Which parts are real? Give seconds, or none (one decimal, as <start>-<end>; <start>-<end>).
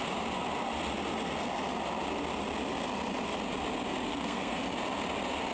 0.0-4.1; 4.6-5.5